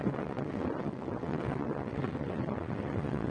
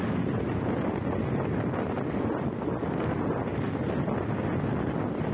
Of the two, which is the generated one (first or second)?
first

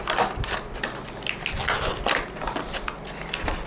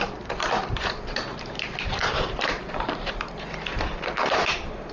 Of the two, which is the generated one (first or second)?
second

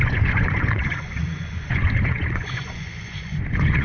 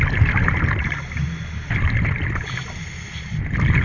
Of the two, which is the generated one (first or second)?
first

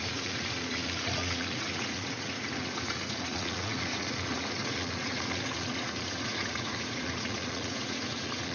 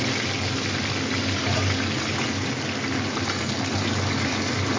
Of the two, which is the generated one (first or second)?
first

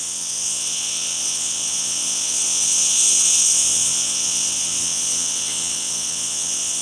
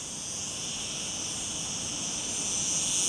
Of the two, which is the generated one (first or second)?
first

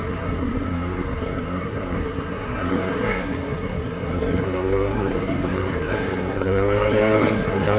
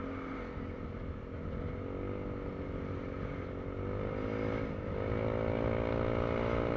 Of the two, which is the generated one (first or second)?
first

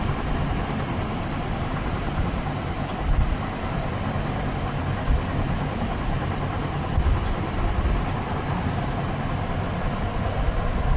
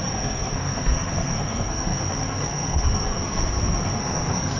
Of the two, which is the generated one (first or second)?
second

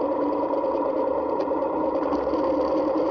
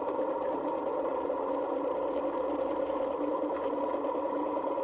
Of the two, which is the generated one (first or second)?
second